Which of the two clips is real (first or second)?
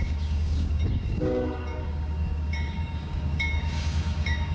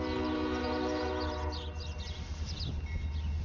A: second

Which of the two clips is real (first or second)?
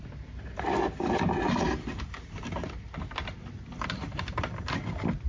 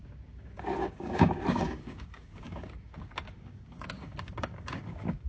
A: first